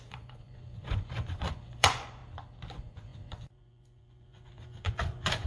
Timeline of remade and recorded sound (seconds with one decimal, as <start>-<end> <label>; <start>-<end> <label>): 0.0-2.2 remade; 2.2-2.7 recorded; 2.7-5.5 remade